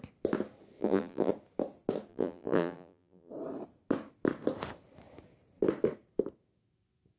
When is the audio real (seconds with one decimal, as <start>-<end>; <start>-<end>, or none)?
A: 0.0-0.8; 1.3-2.1; 3.3-7.2

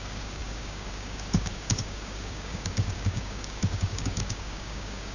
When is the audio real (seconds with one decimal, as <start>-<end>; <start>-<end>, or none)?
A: none

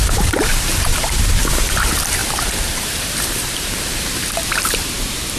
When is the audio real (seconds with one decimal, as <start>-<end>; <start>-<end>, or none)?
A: none

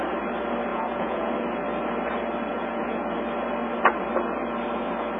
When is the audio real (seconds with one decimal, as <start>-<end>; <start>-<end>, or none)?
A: 0.0-0.7; 1.3-2.5; 3.1-5.2

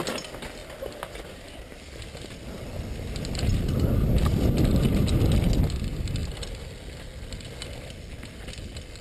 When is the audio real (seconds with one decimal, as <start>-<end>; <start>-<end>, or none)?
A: 0.0-9.0